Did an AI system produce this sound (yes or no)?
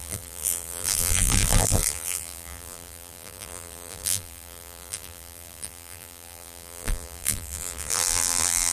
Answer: yes